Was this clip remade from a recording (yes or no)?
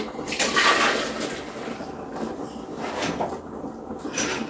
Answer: no